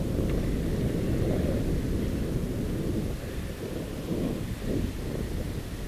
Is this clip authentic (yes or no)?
yes